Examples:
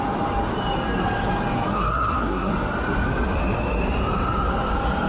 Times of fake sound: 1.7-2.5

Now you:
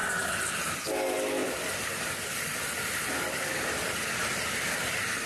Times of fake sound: 0.0-0.9; 1.4-4.6